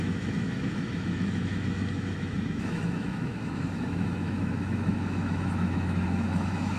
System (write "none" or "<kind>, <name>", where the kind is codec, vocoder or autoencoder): autoencoder, DAC-VAE